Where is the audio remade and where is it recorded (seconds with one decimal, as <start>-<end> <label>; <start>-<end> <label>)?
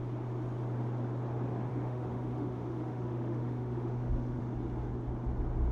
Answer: 0.0-1.7 recorded; 1.7-4.4 remade; 4.4-5.7 recorded